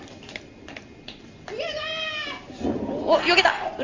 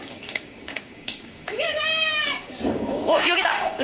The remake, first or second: second